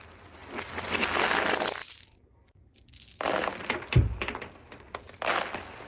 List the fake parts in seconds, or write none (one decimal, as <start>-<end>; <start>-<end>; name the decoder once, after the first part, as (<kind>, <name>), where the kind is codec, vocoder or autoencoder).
none